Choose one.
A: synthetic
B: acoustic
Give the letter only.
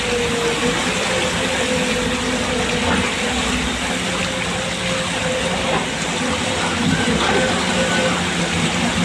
B